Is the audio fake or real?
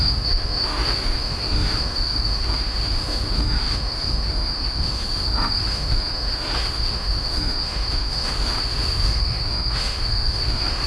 fake